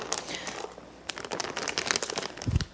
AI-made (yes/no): no